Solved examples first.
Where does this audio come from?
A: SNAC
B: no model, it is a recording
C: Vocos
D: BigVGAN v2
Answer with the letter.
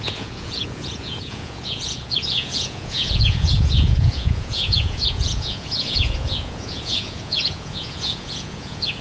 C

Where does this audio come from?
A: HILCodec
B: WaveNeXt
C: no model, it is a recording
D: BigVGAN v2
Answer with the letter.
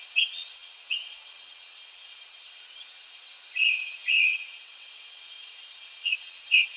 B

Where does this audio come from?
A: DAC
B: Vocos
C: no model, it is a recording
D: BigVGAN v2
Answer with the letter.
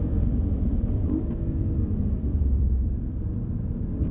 D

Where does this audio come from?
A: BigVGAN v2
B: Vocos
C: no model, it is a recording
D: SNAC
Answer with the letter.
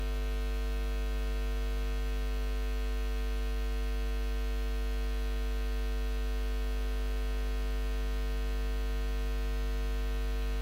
C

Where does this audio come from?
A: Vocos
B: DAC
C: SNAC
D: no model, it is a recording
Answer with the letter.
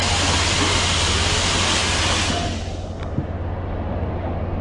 D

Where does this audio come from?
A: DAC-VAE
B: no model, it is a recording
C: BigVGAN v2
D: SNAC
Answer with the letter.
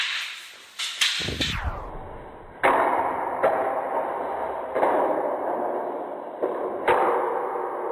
B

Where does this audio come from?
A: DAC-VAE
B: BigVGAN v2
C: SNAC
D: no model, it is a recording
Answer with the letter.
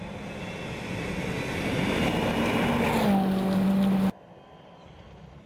D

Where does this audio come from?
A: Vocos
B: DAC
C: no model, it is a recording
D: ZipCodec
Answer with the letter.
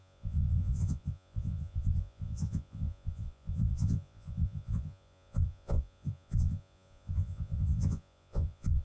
A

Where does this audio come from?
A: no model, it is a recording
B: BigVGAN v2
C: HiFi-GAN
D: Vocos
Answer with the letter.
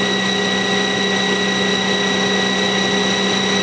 A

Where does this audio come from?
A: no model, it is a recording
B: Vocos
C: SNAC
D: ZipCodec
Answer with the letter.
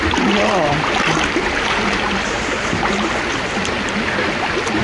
A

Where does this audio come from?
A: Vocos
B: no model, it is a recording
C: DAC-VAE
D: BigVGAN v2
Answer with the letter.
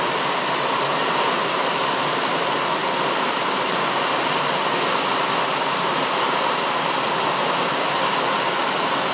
B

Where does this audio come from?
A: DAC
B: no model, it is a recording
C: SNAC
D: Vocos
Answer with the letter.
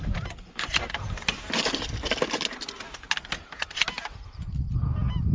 B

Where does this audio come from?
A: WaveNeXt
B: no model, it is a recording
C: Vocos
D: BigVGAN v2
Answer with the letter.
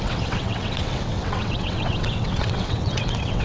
A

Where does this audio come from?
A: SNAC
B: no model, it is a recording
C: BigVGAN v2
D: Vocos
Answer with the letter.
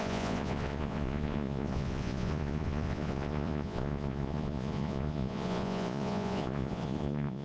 D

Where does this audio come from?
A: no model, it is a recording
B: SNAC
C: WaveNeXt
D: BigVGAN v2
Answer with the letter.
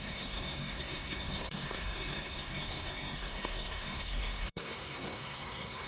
B